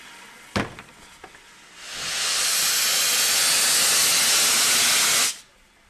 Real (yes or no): yes